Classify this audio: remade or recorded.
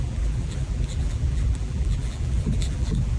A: remade